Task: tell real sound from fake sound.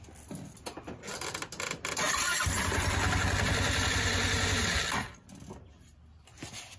real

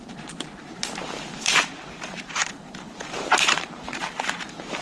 fake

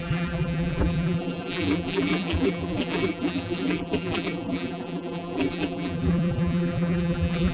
fake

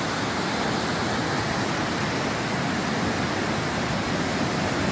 real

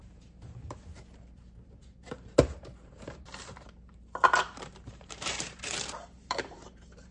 fake